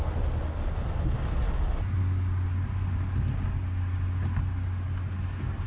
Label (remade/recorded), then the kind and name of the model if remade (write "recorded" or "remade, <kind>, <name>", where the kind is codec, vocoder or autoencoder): recorded